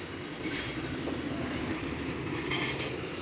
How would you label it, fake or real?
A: real